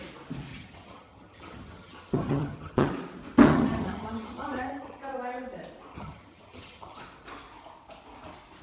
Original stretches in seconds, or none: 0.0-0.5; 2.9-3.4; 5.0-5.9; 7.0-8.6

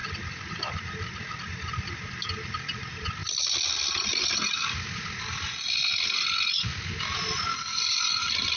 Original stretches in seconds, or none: 0.0-8.6

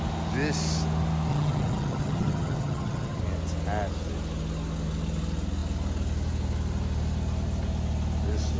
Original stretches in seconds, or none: 0.0-1.3; 3.2-8.6

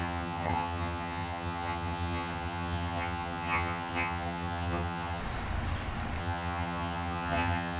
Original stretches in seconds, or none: 5.2-6.2

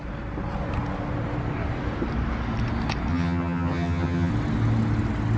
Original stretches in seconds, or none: 0.0-3.1; 4.3-5.4